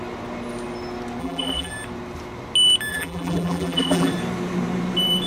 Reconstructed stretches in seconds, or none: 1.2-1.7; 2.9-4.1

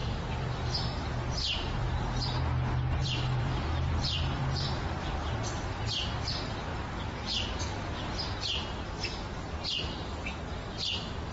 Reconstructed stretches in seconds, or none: 0.0-2.4; 3.0-4.4

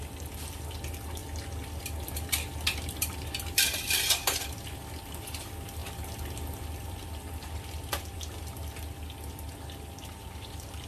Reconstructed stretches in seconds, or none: 3.7-5.0; 5.8-8.7

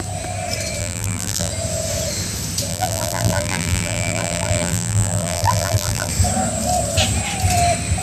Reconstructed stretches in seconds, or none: 0.8-1.5; 2.7-6.1

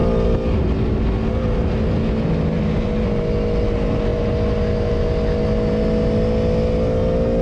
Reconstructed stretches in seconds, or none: none

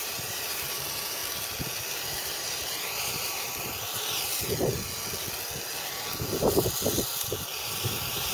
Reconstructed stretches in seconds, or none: 0.0-1.2; 2.2-4.3; 7.6-8.3

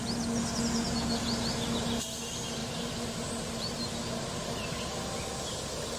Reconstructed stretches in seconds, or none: 2.6-5.3